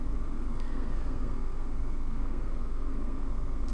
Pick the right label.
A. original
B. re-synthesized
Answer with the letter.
B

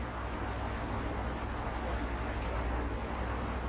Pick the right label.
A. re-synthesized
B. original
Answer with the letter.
B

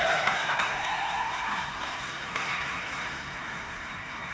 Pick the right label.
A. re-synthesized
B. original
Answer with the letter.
A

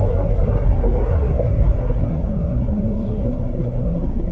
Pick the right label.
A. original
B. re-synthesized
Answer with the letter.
B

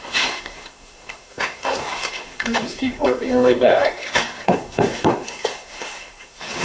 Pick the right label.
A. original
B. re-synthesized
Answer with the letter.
B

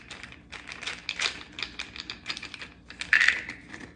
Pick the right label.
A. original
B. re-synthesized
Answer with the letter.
A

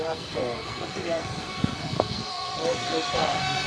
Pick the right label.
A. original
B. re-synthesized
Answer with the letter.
B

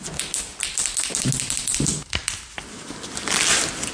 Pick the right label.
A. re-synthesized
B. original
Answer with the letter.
B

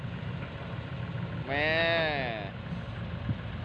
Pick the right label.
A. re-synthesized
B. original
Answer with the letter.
B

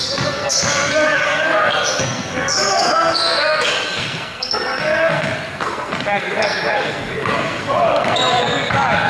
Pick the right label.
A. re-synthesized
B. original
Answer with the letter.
A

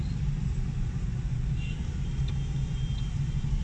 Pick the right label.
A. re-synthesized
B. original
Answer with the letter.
B